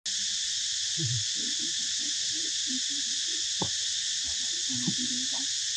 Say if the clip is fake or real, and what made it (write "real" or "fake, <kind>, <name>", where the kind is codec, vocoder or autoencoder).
real